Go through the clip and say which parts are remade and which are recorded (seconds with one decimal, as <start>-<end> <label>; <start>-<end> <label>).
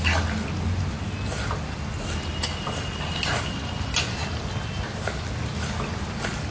0.0-6.5 recorded